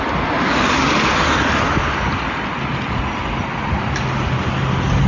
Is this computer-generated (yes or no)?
no